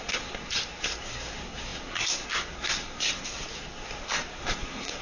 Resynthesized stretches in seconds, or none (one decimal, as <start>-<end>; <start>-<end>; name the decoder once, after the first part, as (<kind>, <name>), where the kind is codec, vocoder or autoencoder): 0.0-5.0 (codec, SNAC)